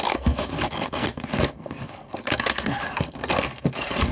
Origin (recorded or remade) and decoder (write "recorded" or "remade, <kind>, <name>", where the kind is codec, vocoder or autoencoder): remade, codec, SNAC